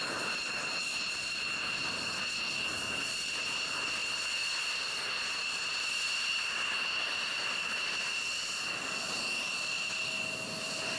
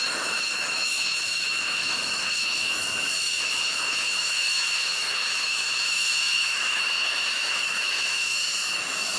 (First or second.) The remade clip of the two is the second